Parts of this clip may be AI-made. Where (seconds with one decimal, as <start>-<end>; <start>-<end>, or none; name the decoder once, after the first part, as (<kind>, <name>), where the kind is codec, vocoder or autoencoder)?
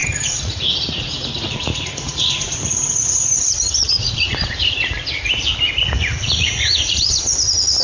0.0-4.7 (vocoder, Vocos); 6.0-7.1